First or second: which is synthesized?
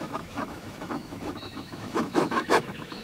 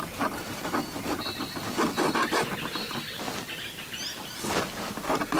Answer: first